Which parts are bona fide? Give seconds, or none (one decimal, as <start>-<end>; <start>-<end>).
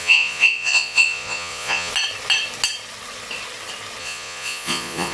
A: 1.9-4.0